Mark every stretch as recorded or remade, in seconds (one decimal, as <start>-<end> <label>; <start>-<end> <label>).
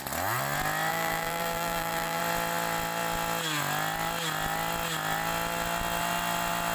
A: 0.0-0.9 recorded; 0.9-2.2 remade; 2.2-6.7 recorded